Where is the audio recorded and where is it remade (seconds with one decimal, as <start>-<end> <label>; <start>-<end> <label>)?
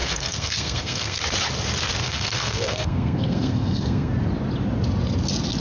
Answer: 0.0-1.2 remade; 1.2-2.0 recorded; 2.0-4.1 remade; 4.1-5.6 recorded